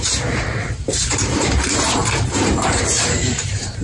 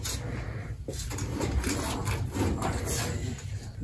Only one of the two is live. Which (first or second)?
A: second